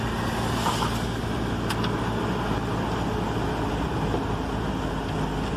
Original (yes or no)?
yes